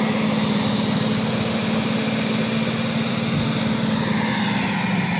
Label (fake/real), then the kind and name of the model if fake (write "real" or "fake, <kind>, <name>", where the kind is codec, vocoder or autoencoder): real